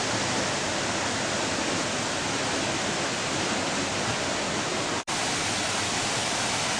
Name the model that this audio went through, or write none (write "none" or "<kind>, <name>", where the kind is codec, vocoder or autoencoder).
none